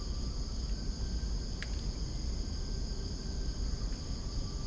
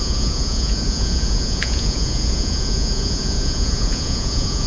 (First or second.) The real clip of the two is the first